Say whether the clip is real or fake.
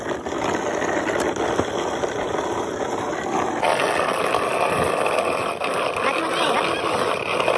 real